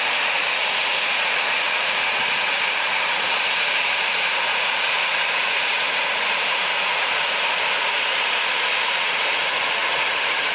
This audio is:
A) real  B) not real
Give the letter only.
B